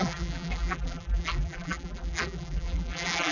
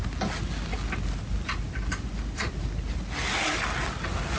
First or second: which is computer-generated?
first